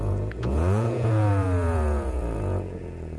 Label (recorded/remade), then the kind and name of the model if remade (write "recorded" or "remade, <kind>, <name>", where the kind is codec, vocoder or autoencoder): remade, vocoder, Vocos